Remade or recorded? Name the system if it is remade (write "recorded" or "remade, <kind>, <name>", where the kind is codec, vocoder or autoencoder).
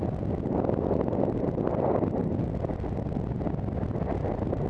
recorded